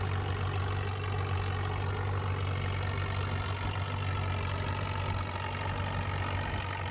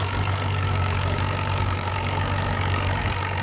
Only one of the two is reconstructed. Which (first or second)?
second